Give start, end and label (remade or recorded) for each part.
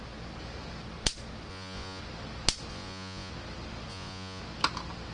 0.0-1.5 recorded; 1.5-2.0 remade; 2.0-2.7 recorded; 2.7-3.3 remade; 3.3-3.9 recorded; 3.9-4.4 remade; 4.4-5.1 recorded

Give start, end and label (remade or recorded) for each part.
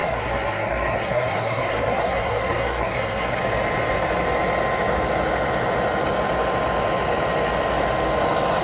0.0-3.4 remade; 3.4-8.6 recorded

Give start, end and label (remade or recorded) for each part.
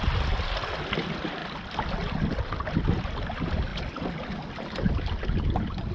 0.0-5.9 recorded